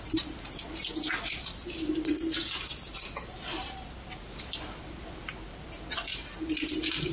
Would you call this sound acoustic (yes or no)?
yes